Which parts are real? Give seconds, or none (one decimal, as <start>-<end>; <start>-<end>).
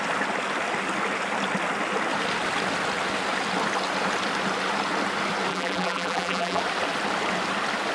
0.0-5.5; 6.6-7.9